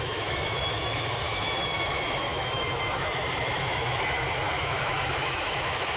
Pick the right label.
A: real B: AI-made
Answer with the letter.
B